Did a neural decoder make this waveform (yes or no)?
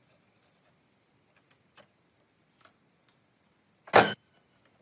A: no